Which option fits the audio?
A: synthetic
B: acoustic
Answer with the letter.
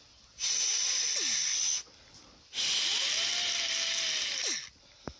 B